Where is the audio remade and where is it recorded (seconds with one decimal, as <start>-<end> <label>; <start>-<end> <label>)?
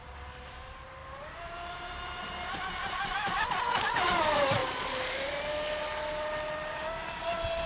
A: 0.0-4.6 remade; 4.6-7.7 recorded